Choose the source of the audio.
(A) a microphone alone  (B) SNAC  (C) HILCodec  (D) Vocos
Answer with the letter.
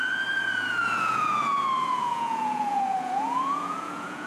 D